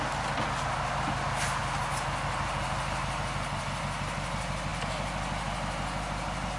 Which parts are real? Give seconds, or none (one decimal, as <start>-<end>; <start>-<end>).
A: 0.0-6.6